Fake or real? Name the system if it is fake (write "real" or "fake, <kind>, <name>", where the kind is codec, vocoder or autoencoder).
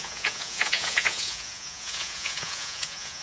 fake, vocoder, Vocos